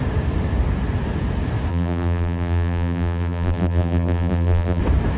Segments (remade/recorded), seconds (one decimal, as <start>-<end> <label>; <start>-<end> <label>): 0.0-1.7 recorded; 1.7-4.8 remade; 4.8-5.2 recorded

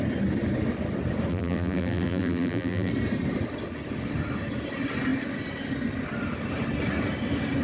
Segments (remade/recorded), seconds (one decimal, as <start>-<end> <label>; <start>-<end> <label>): 0.0-1.3 recorded; 1.3-2.9 remade; 2.9-7.6 recorded

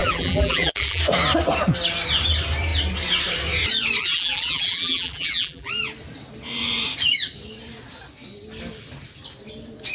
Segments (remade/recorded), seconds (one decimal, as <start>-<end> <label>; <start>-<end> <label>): 0.0-1.0 remade; 1.0-4.0 recorded; 4.0-5.7 remade; 5.7-9.9 recorded

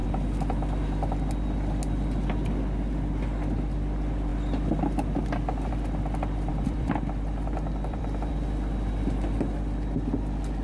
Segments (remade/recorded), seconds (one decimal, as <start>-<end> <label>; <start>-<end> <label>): 0.0-6.5 recorded; 6.5-8.3 remade; 8.3-10.6 recorded

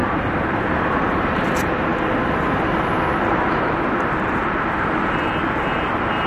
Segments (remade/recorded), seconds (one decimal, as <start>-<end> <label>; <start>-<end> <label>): 0.0-1.9 remade; 1.9-3.6 recorded; 3.6-6.3 remade